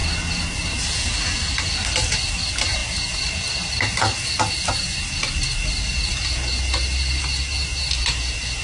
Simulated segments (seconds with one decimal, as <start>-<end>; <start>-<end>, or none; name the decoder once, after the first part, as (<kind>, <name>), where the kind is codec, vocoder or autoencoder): none